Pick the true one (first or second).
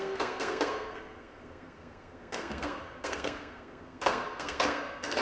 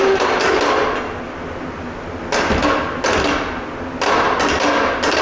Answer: second